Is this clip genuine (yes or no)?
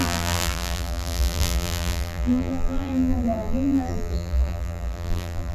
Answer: no